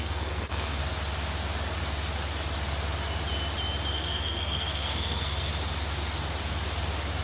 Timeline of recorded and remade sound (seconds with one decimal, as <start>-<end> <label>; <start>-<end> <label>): 0.0-0.8 remade; 0.8-3.9 recorded; 3.9-5.5 remade; 5.5-7.2 recorded